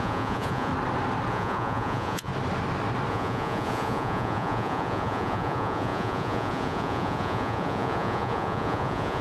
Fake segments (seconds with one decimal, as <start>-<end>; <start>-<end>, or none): 0.0-0.7; 1.3-2.3; 3.1-9.2